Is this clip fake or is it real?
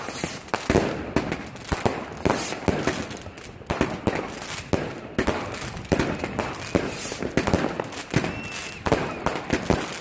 real